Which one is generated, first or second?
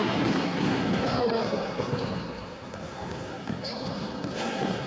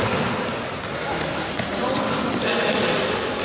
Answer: first